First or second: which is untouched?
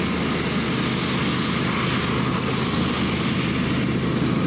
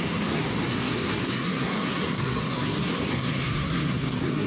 first